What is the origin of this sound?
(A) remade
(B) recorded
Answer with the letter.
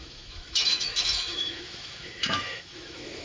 A